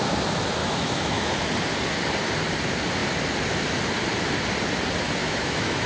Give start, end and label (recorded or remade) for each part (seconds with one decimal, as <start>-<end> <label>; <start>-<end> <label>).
0.0-0.6 recorded; 0.6-1.3 remade; 1.3-5.2 recorded; 5.2-5.9 remade